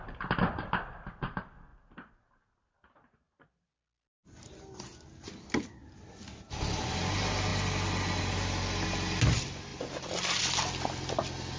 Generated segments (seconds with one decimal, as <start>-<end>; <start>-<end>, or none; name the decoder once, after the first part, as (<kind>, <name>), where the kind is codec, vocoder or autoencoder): none